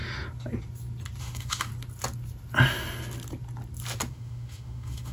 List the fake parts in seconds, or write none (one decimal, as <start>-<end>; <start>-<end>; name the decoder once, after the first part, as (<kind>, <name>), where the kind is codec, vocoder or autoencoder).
1.2-1.7 (autoencoder, DAC-VAE); 4.1-5.1